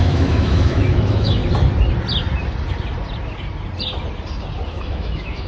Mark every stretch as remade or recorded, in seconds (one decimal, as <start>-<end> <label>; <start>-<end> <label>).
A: 0.0-1.4 remade; 1.4-4.7 recorded; 4.7-5.5 remade

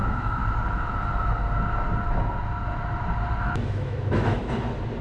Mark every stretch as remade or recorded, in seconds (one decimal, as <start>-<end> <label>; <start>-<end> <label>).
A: 0.0-0.4 remade; 0.4-3.4 recorded; 3.4-4.4 remade; 4.4-5.0 recorded

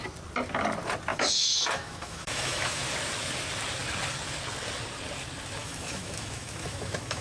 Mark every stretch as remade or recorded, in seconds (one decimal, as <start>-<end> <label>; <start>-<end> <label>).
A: 0.0-1.1 recorded; 1.1-2.8 remade; 2.8-5.6 recorded; 5.6-7.2 remade

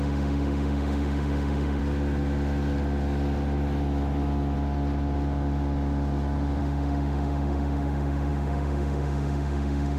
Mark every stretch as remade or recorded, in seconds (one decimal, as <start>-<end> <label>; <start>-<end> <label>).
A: 0.0-1.8 remade; 1.8-6.6 recorded; 6.6-10.0 remade

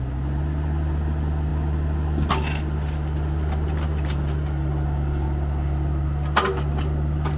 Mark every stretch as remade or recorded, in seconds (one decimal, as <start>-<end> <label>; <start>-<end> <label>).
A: 0.0-7.4 recorded